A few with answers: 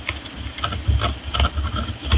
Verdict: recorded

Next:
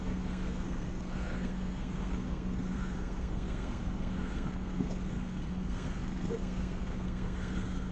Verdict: remade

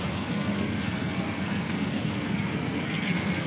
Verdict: remade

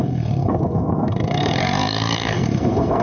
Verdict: remade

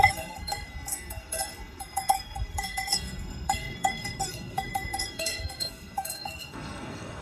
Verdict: remade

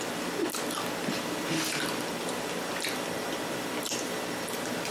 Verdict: recorded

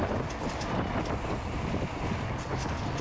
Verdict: recorded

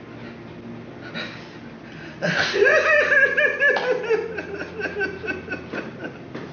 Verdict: recorded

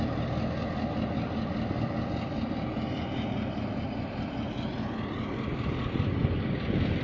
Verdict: recorded